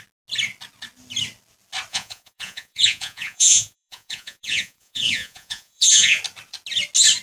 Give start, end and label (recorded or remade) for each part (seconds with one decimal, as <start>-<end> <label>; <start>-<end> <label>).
0.0-1.9 recorded; 1.9-6.2 remade; 6.2-7.2 recorded